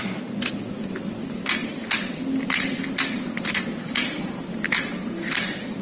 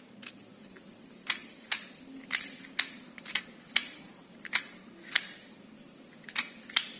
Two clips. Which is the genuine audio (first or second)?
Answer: first